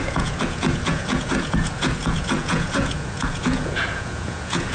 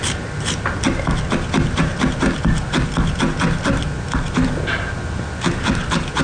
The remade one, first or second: first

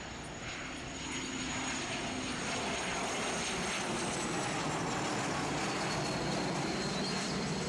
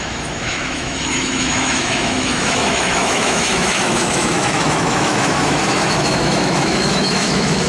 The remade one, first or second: second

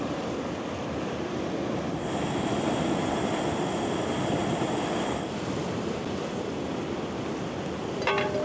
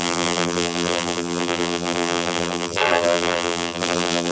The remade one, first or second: second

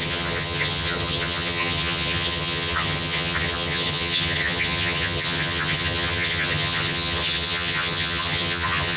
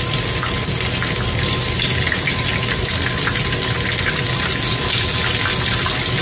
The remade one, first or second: first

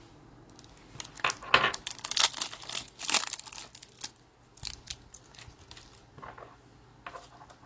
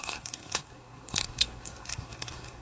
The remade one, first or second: second